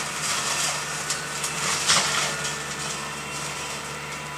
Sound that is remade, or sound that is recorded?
recorded